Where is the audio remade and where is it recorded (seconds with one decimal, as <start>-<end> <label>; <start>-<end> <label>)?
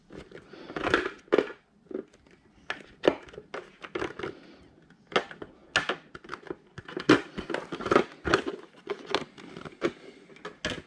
0.0-10.9 recorded